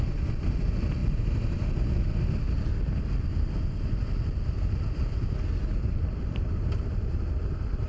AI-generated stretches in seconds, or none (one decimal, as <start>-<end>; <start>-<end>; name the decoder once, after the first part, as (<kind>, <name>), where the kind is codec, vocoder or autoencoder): none